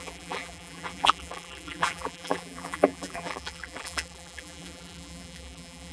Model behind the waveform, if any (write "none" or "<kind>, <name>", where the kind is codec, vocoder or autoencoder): vocoder, BigVGAN v2